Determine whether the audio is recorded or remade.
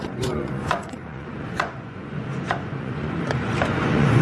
remade